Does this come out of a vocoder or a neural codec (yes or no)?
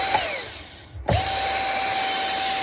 no